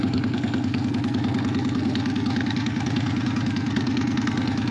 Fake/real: fake